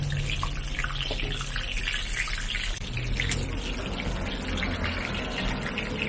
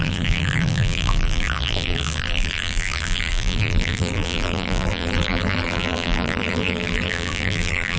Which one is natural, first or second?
first